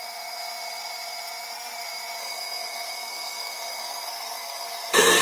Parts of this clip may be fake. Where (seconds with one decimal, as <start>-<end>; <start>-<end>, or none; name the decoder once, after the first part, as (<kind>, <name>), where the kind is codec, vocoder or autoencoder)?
2.2-5.2 (codec, SNAC)